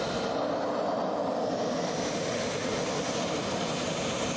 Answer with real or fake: real